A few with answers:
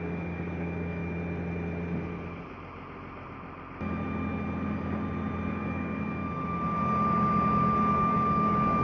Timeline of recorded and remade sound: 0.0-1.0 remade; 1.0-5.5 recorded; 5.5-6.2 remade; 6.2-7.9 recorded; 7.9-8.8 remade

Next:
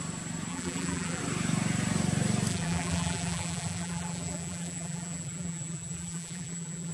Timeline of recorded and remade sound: 0.0-0.5 recorded; 0.5-1.2 remade; 1.2-2.5 recorded; 2.5-6.9 remade

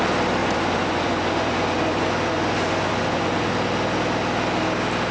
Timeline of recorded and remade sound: 0.0-0.4 recorded; 0.4-3.5 remade; 3.5-5.1 recorded

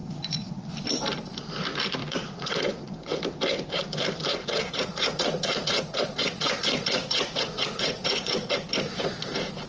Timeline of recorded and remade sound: 0.0-0.6 remade; 0.6-2.0 recorded; 2.0-3.2 remade; 3.2-4.3 recorded; 4.3-8.7 remade; 8.7-9.7 recorded